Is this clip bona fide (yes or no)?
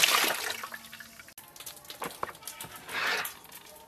yes